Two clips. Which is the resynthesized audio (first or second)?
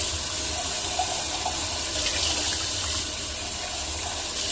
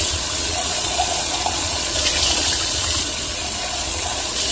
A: second